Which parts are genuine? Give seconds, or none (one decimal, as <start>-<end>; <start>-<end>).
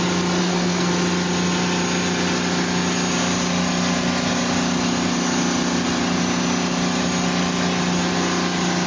0.0-0.4; 0.9-8.9